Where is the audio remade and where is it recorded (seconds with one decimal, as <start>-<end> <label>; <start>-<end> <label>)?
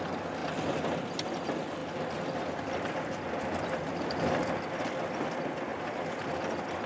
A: 0.0-1.8 recorded; 1.8-4.3 remade; 4.3-5.7 recorded; 5.7-6.3 remade; 6.3-6.9 recorded